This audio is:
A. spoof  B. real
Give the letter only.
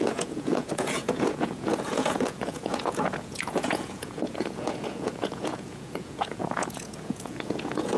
A